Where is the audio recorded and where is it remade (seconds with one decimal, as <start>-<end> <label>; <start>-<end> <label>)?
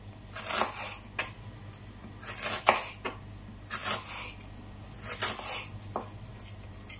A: 0.0-7.0 recorded